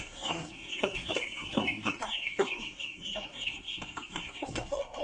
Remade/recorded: remade